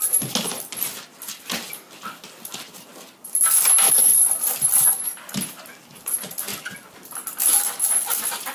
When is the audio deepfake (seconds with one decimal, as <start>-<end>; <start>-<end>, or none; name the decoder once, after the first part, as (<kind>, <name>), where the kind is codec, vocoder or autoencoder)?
none